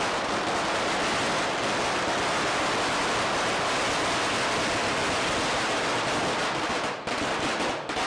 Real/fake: real